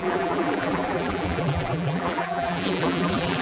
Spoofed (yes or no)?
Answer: yes